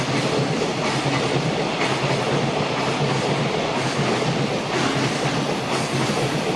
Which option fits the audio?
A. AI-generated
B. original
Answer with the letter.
B